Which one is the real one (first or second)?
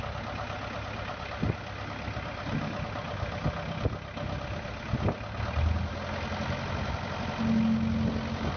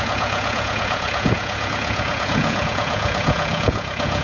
first